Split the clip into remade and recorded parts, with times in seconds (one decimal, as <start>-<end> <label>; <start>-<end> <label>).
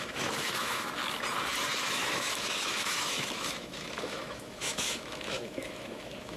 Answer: 0.0-1.0 remade; 1.0-1.8 recorded; 1.8-6.4 remade